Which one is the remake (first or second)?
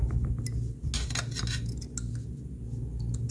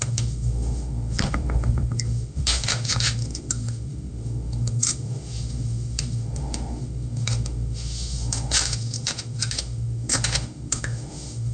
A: second